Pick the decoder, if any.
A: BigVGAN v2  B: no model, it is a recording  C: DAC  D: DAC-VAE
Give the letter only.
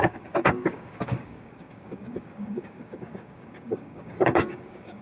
C